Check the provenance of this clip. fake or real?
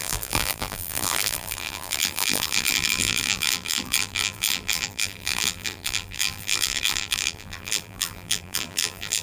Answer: fake